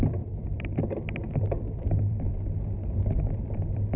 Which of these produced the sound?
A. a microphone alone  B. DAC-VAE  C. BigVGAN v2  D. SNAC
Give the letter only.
C